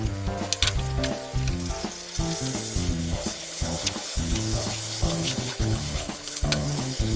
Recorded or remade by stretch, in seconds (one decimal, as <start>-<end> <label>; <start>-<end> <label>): 0.0-3.0 recorded; 3.0-7.2 remade